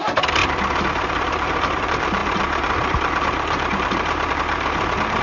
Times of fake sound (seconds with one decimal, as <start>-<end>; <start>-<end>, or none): 0.0-0.4; 1.1-5.2